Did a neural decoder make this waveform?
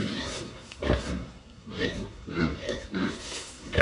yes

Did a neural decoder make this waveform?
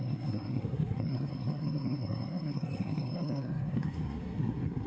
yes